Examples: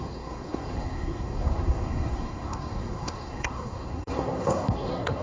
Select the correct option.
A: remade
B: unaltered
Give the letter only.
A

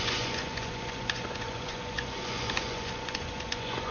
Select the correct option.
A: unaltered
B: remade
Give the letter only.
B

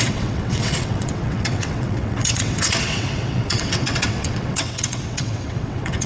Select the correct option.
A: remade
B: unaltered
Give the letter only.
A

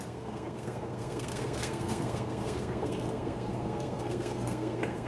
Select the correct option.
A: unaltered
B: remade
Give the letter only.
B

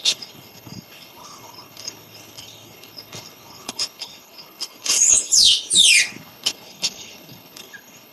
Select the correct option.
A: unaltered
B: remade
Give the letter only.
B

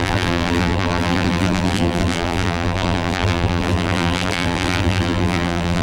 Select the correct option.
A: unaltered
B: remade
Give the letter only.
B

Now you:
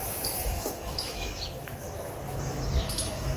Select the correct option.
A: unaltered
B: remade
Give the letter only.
B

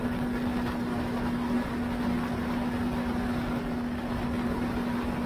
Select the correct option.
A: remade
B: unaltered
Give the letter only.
B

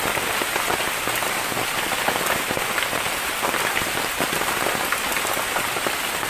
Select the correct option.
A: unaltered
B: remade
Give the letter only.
A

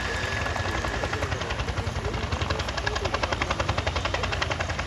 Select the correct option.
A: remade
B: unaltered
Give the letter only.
B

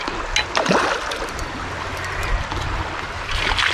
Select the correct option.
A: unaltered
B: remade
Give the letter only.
A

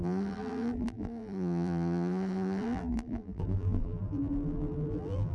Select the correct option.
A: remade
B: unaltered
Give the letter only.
A